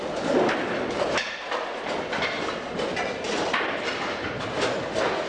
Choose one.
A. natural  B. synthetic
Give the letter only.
A